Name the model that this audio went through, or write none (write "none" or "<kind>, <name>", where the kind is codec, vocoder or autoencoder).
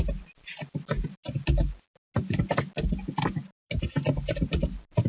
none